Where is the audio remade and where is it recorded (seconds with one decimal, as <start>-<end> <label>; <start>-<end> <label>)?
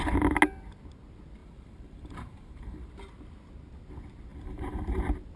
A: 0.0-1.4 recorded; 1.4-2.9 remade; 2.9-4.3 recorded; 4.3-5.0 remade; 5.0-5.4 recorded